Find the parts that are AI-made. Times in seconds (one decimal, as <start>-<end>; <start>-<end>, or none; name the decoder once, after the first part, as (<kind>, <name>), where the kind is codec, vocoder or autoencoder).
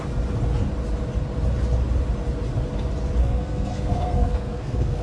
3.2-5.0 (codec, SNAC)